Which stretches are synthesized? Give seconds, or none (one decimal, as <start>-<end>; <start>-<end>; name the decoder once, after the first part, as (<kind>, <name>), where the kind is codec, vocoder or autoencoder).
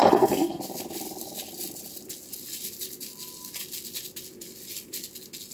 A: 0.0-0.6 (codec, SNAC)